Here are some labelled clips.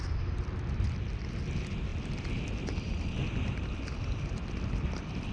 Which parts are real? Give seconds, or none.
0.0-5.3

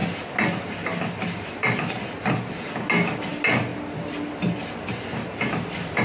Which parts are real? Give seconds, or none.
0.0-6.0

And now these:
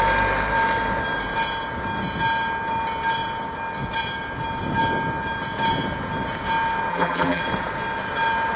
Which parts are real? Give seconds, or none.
0.0-6.9; 7.4-8.6

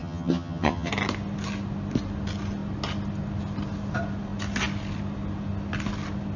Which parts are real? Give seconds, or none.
0.9-6.4

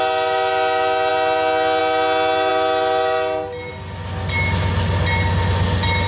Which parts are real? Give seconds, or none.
0.0-6.1